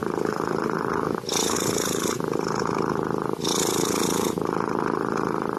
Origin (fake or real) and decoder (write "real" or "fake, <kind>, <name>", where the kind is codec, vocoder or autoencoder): real